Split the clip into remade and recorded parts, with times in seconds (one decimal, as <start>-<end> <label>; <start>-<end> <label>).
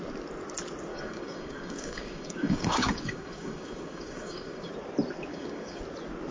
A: 0.0-0.9 recorded; 0.9-4.7 remade; 4.7-5.3 recorded; 5.3-5.8 remade; 5.8-6.3 recorded